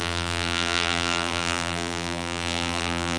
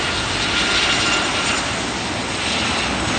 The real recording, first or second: second